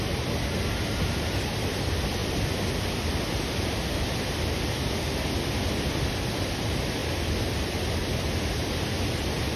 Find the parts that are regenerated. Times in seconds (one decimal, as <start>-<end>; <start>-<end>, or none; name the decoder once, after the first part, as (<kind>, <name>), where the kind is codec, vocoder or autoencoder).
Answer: none